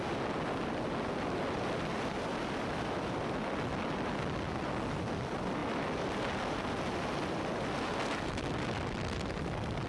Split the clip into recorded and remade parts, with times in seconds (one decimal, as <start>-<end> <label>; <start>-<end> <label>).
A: 0.0-9.9 recorded